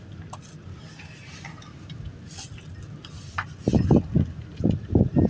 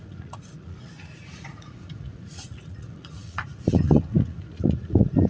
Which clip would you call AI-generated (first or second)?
second